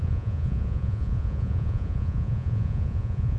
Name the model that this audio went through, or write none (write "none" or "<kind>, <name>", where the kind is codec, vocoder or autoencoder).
vocoder, Vocos